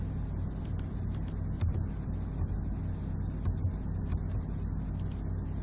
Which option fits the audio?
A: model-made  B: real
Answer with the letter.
B